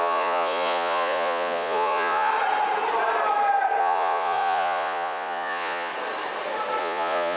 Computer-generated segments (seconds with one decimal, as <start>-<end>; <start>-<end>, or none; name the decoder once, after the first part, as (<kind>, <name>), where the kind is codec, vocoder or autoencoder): 0.0-2.3 (vocoder, Vocos); 3.8-5.9; 6.8-7.4